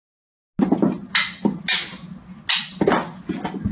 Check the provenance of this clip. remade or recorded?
recorded